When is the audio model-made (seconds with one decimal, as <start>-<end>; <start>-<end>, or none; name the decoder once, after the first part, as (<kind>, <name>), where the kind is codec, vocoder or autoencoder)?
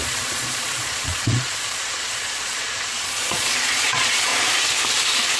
0.0-4.3 (vocoder, Vocos)